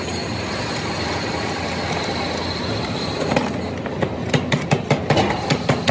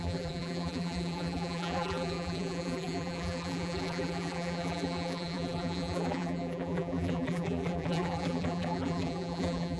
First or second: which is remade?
second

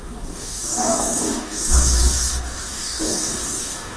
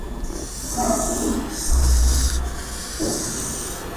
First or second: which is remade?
first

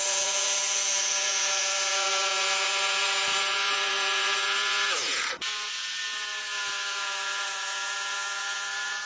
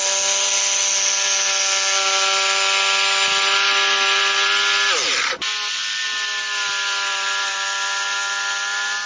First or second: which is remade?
first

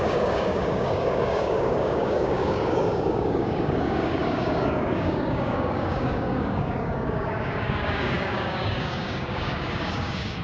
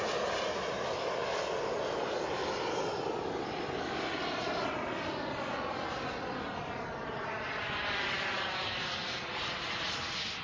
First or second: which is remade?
first